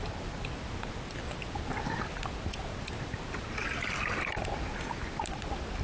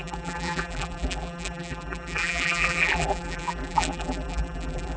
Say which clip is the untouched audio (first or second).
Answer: first